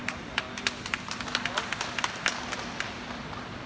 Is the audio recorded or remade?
recorded